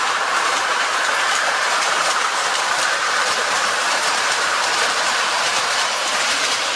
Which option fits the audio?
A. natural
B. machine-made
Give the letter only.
B